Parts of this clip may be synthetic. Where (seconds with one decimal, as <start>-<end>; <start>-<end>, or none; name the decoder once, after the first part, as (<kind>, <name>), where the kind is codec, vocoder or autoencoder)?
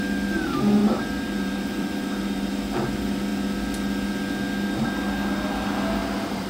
0.8-2.5 (vocoder, BigVGAN v2); 6.0-6.5